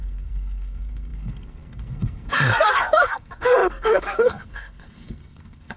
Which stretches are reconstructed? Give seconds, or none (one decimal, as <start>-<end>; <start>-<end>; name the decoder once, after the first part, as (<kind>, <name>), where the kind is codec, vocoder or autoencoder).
0.0-5.8 (codec, SNAC)